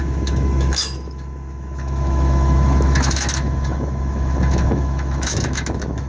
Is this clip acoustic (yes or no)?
no